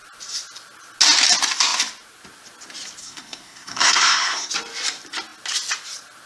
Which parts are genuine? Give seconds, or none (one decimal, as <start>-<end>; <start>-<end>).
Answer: 0.0-3.0; 4.5-6.3